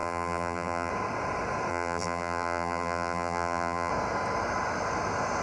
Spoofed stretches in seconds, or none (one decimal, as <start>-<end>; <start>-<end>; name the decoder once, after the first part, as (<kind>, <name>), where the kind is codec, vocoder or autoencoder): 0.0-0.9 (vocoder, BigVGAN v2); 1.7-3.9